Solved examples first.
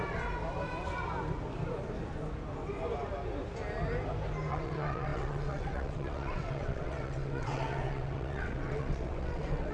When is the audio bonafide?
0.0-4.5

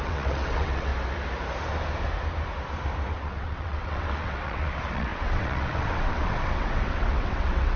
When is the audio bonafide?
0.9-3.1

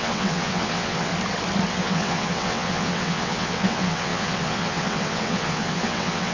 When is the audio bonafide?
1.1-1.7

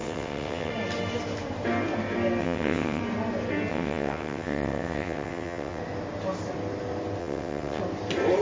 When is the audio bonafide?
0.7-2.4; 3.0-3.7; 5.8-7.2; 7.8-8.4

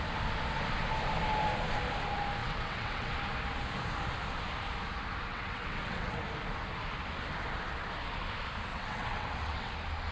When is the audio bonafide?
0.0-2.4; 3.1-5.3; 6.2-8.7; 9.7-10.1

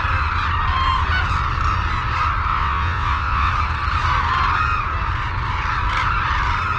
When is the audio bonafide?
0.0-2.5; 3.5-6.8